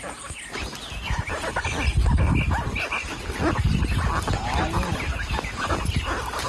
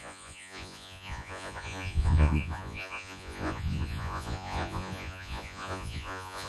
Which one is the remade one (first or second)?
second